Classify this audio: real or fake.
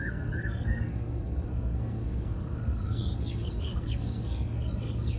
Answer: fake